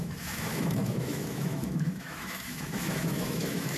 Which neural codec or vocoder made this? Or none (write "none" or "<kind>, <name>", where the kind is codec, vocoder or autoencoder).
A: autoencoder, DAC-VAE